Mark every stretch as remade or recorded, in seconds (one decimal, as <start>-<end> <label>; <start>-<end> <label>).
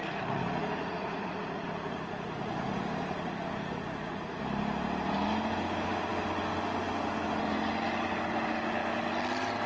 0.0-4.4 remade; 4.4-9.7 recorded